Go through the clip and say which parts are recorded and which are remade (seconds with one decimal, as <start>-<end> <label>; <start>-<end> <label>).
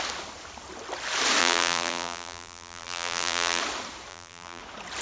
0.0-1.4 recorded; 1.4-3.6 remade; 3.6-4.1 recorded; 4.1-4.6 remade; 4.6-5.0 recorded